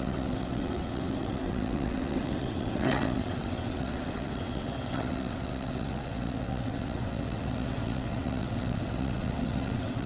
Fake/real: fake